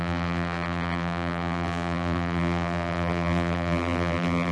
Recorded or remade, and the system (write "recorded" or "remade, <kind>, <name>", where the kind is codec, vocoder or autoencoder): remade, vocoder, BigVGAN v2